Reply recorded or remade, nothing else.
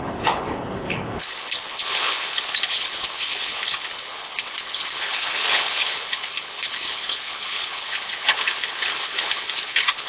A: remade